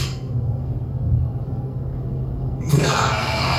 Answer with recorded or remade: remade